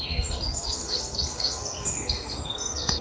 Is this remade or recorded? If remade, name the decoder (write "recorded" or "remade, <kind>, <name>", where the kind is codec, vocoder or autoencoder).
remade, codec, SNAC